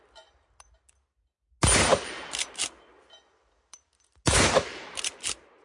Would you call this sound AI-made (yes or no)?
no